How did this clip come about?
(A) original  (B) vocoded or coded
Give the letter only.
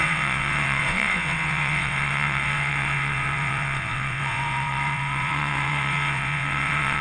B